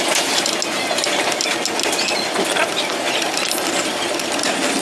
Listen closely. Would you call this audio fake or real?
real